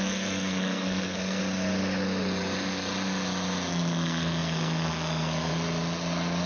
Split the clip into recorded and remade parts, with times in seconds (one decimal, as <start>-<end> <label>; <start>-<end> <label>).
0.0-1.4 remade; 1.4-3.7 recorded; 3.7-5.5 remade; 5.5-6.5 recorded